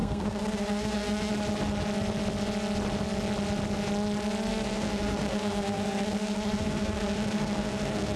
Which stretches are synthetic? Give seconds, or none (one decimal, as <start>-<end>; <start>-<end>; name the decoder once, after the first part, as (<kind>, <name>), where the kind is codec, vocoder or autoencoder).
0.0-1.3 (codec, SNAC); 4.5-8.2